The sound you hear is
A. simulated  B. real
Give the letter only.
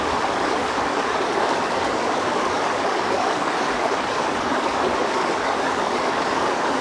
A